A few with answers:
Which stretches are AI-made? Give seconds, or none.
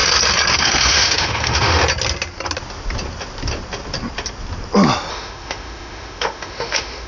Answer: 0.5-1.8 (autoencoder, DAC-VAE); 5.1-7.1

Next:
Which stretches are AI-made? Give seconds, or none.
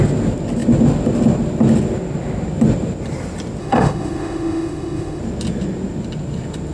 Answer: 3.6-5.2 (autoencoder, DAC-VAE)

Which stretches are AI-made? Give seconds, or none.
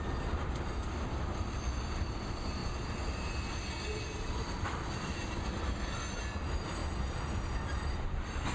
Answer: none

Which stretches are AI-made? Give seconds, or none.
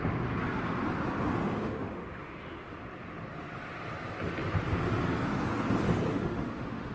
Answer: 1.3-2.8 (autoencoder, DAC-VAE); 6.1-6.9